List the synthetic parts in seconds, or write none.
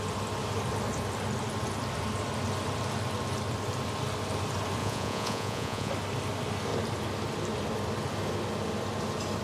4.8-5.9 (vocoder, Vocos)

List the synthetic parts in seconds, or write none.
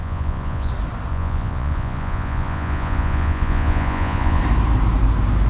0.0-0.7 (vocoder, Vocos); 1.1-4.4